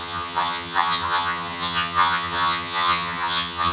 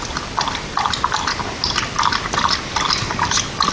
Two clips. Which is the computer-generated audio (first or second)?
first